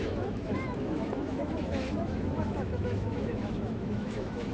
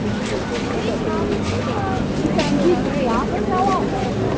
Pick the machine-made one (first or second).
first